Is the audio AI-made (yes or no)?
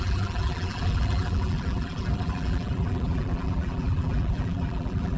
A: yes